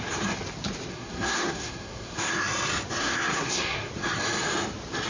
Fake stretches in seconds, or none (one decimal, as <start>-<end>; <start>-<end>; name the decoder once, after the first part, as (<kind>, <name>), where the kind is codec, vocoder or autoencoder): 0.9-2.3 (codec, SNAC); 3.0-3.9